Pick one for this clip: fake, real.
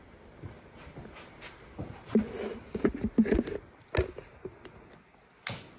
real